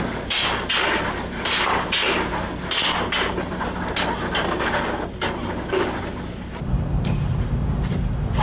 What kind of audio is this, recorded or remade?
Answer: recorded